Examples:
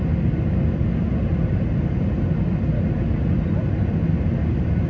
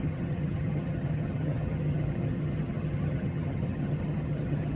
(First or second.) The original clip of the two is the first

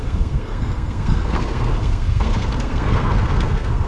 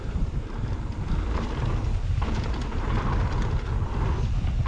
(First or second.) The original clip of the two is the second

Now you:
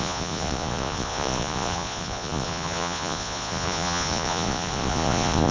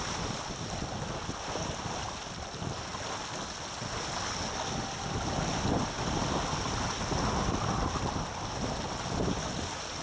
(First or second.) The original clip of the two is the second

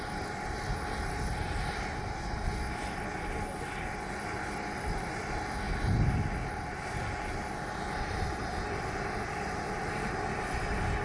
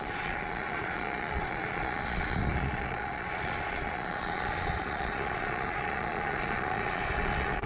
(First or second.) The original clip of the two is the first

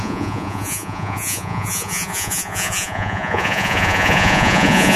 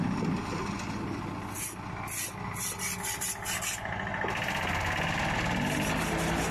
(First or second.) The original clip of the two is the second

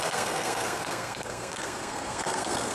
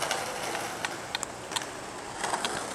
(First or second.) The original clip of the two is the second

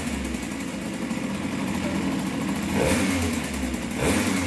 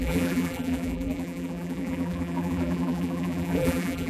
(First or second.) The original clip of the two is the first